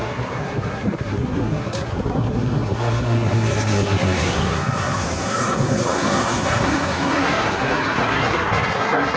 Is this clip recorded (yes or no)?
no